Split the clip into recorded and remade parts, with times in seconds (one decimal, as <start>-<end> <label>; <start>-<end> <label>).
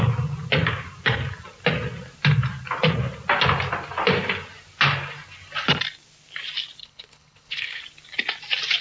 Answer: 0.0-6.8 recorded; 6.8-7.8 remade; 7.8-8.8 recorded